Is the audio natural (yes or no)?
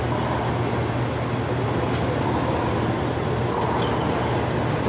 yes